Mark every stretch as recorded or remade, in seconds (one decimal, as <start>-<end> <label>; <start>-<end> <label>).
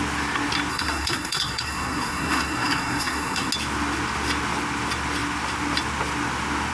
0.0-0.7 recorded; 0.7-3.5 remade; 3.5-6.7 recorded